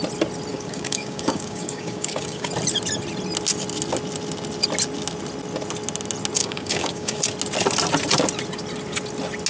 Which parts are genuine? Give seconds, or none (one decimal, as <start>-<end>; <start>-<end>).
0.0-0.5; 2.5-6.4; 7.2-9.5